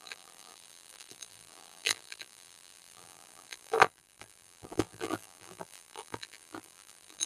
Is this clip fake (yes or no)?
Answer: yes